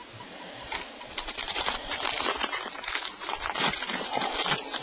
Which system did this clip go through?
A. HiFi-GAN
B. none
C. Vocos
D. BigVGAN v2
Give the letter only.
D